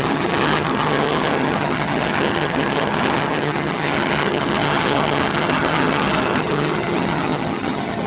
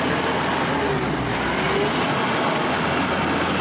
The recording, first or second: second